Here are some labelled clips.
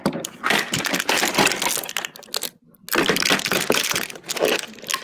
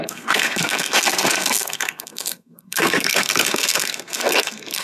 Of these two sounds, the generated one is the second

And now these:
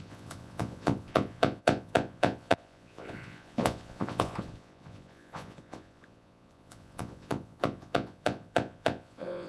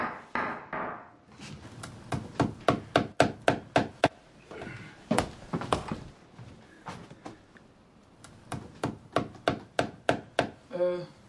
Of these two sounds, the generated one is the first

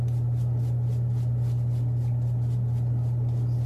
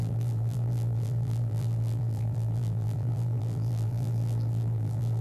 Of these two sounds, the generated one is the second